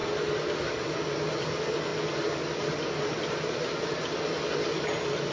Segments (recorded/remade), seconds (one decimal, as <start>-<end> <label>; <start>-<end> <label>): 0.0-5.3 recorded